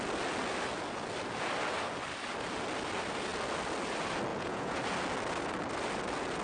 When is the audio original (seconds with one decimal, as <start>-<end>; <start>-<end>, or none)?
0.0-4.3; 4.8-6.4